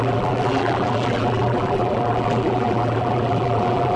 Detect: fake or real fake